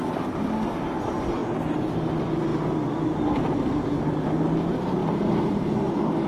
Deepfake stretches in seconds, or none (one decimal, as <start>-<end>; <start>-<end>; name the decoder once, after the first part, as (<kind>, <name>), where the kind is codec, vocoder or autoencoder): none